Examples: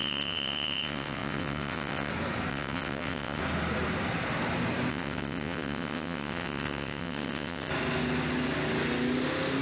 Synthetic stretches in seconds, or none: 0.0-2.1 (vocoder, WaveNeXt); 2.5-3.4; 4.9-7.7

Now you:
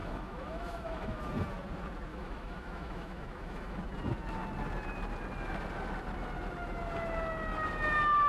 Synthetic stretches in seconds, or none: 0.0-1.2 (autoencoder, DAC-VAE); 2.1-3.8

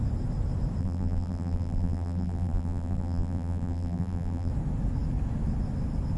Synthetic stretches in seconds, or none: 0.8-4.5 (vocoder, BigVGAN v2)

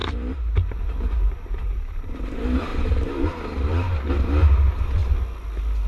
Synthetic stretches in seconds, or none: 0.0-5.0 (vocoder, BigVGAN v2)

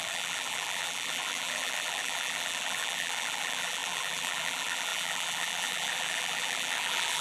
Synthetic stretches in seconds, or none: 0.0-7.2 (vocoder, BigVGAN v2)

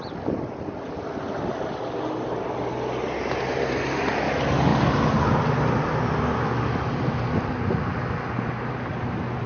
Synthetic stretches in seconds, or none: none

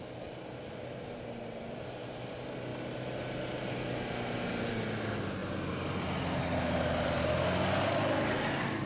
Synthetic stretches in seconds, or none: none